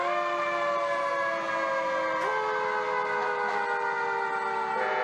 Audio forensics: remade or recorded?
recorded